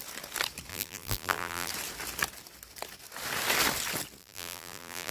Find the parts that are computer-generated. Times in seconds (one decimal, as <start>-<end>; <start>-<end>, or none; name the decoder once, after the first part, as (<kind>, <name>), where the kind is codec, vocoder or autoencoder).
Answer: 0.7-1.7 (vocoder, BigVGAN v2); 4.2-5.1